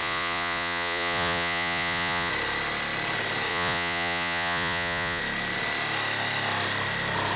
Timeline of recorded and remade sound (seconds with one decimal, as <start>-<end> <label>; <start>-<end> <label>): 0.0-2.3 remade; 2.3-3.5 recorded; 3.5-5.2 remade; 5.2-7.4 recorded